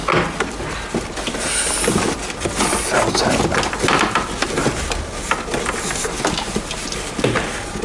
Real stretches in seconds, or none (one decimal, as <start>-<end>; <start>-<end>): 0.0-7.8